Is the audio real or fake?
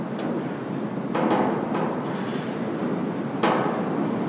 real